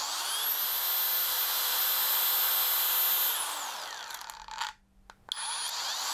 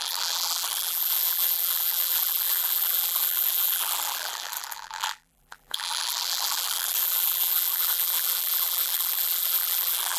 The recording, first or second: first